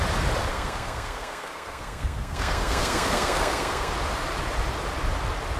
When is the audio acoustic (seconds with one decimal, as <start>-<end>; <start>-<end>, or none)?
0.0-0.5; 3.9-5.6